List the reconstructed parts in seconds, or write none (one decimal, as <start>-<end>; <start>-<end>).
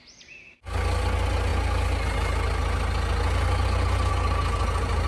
none